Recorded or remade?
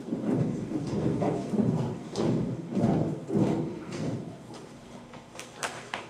remade